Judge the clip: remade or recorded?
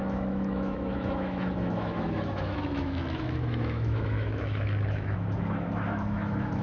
remade